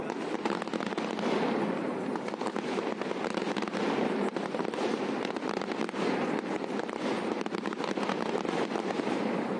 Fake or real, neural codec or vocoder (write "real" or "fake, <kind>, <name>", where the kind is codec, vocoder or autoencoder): real